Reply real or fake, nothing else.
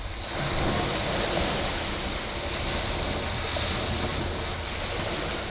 real